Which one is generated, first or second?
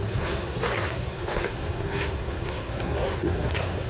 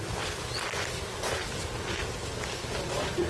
first